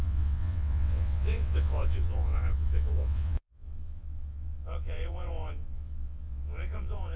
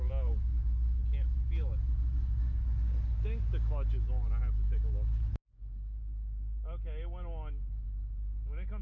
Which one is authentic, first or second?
second